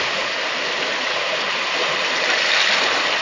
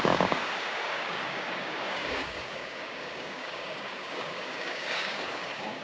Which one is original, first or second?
first